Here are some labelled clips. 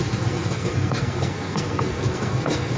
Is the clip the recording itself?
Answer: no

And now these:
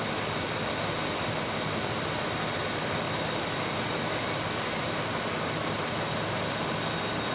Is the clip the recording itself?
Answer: yes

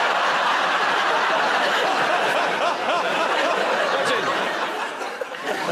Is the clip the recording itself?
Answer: yes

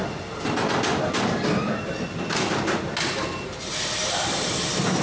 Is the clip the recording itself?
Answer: yes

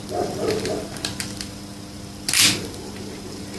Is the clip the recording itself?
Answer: yes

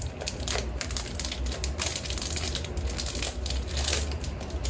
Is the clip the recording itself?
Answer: yes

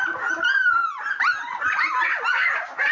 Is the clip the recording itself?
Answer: yes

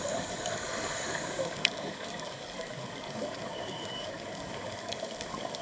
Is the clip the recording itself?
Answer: no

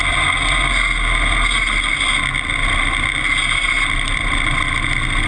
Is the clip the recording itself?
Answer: yes